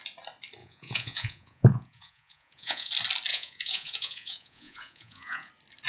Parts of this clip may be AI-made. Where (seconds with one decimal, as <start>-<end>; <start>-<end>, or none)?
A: 0.6-2.9; 3.3-5.5